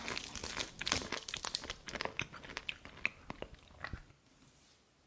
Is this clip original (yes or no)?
yes